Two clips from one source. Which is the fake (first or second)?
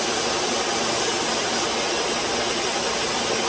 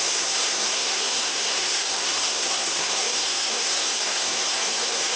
second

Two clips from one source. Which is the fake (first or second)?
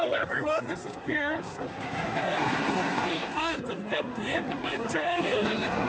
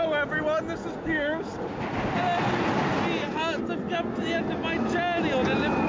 first